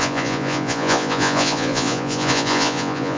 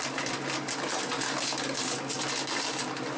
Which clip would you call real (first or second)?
second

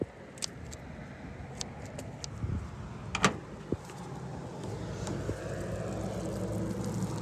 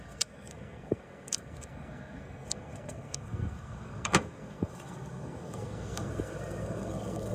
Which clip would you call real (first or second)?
first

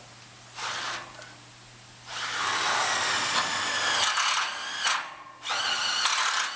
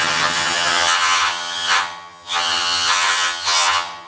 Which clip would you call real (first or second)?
first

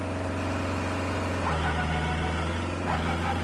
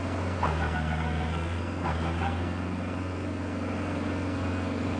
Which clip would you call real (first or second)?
first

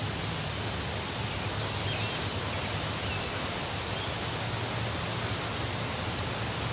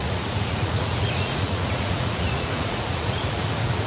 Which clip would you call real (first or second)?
first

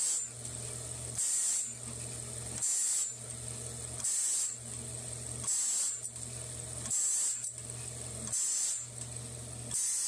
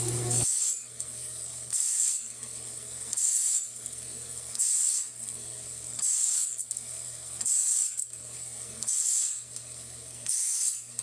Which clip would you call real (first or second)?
first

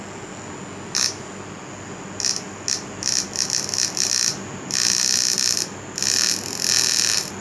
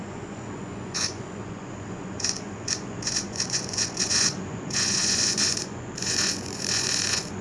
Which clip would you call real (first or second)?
first